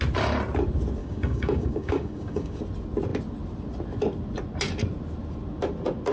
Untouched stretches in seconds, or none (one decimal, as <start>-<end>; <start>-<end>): 0.0-1.0; 2.6-6.1

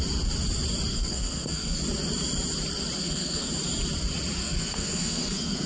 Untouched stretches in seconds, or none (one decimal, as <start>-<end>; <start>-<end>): 0.0-0.9; 1.8-3.0; 3.5-4.4

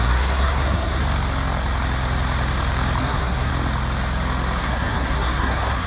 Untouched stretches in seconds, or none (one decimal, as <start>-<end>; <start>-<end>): 1.0-3.0; 3.5-4.6

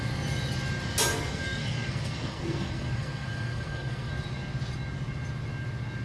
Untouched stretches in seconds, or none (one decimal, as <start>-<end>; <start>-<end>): 0.0-1.1; 4.1-6.0

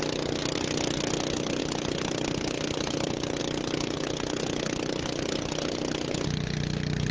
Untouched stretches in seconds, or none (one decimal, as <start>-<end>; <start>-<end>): 0.0-7.1

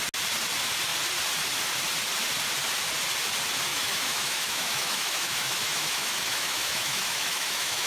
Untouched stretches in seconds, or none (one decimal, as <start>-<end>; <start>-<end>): 0.0-3.7

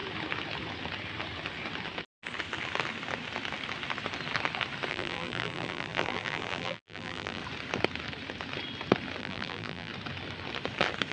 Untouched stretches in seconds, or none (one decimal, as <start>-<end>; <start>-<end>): 0.0-4.9; 7.4-9.2; 9.9-11.1